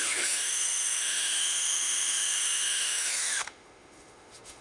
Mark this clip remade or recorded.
remade